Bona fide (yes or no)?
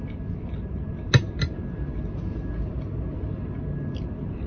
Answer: yes